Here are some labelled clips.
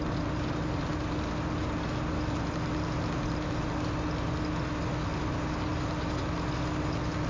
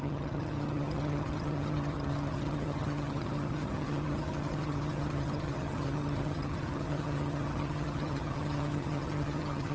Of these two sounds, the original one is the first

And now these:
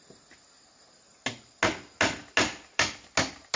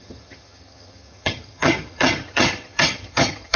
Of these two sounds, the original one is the first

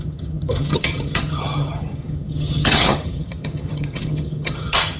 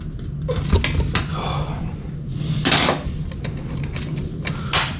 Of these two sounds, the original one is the second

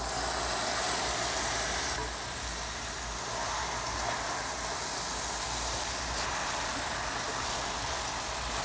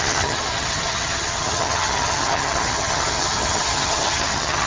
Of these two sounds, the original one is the first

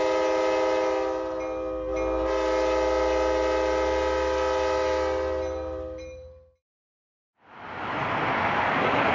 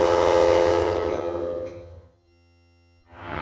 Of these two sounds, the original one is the first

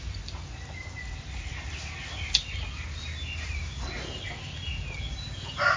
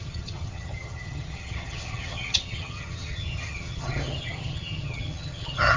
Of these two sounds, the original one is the first